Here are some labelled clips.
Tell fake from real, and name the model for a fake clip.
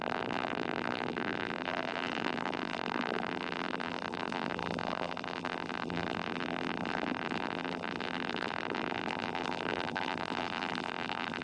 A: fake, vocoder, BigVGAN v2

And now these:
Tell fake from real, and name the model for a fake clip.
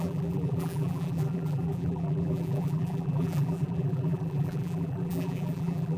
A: fake, vocoder, BigVGAN v2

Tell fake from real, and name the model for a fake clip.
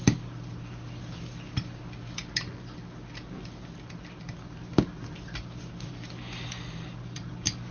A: real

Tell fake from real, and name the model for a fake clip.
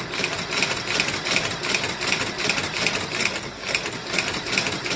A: real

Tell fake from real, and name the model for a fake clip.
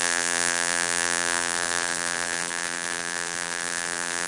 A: fake, vocoder, BigVGAN v2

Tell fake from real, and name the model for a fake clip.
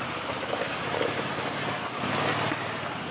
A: fake, vocoder, BigVGAN v2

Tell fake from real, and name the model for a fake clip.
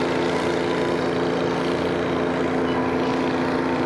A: real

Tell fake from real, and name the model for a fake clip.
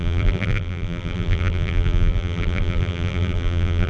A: fake, vocoder, BigVGAN v2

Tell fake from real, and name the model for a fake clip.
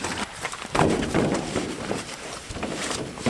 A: fake, vocoder, BigVGAN v2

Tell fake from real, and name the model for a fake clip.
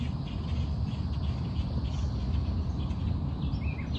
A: real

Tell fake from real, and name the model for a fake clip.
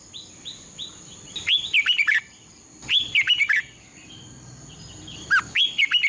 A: fake, vocoder, BigVGAN v2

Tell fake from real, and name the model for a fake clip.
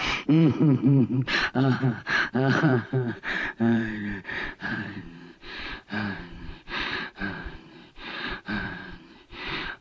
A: fake, vocoder, BigVGAN v2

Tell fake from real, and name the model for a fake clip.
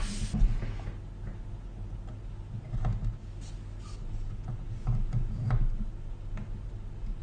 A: real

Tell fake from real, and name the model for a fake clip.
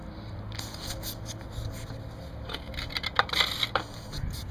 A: real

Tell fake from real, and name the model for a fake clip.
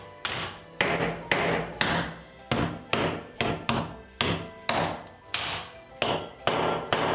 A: real